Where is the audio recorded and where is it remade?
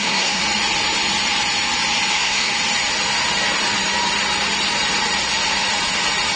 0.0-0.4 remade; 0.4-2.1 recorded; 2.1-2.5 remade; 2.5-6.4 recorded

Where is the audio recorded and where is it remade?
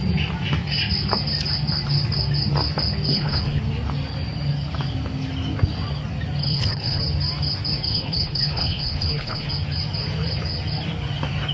0.0-3.1 recorded; 3.1-3.6 remade; 3.6-6.5 recorded; 6.5-7.0 remade; 7.0-7.9 recorded; 7.9-9.5 remade; 9.5-11.5 recorded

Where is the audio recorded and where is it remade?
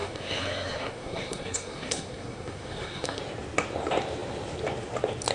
0.0-3.2 remade; 3.2-5.3 recorded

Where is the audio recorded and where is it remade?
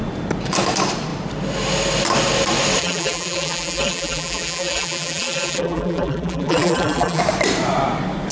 0.0-2.8 recorded; 2.8-7.2 remade; 7.2-8.3 recorded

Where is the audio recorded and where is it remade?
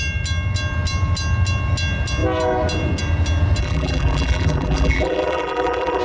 0.0-3.6 recorded; 3.6-6.0 remade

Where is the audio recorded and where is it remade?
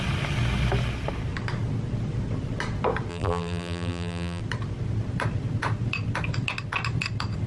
0.0-3.1 recorded; 3.1-4.4 remade; 4.4-7.5 recorded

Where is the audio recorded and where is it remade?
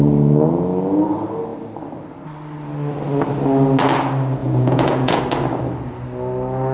0.0-4.4 recorded; 4.4-5.2 remade; 5.2-6.7 recorded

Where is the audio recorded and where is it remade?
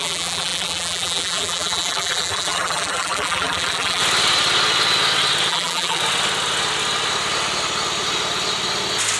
0.0-4.0 remade; 4.0-5.5 recorded; 5.5-6.0 remade; 6.0-9.2 recorded